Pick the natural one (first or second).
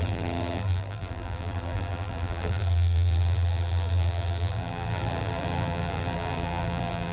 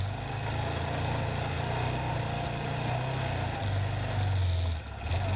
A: second